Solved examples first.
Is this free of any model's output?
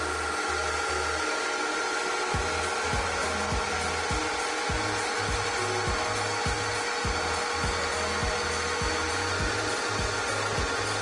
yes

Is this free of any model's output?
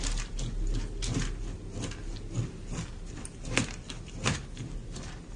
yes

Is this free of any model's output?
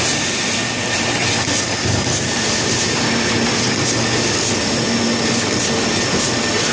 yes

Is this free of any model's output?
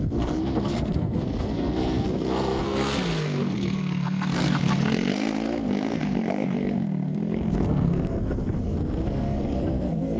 no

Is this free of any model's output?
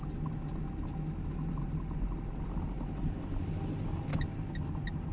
yes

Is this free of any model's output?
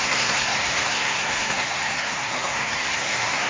no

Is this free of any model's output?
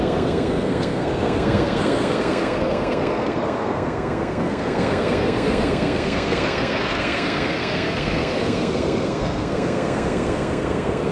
no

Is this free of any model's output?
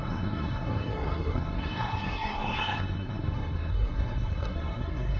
no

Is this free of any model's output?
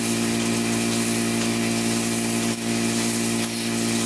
yes